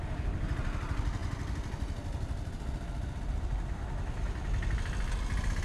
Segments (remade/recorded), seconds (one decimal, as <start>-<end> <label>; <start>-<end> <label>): 0.0-5.6 recorded